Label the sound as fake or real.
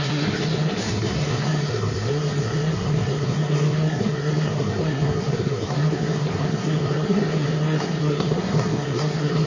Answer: fake